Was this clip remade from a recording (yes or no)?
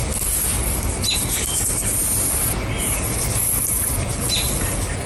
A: no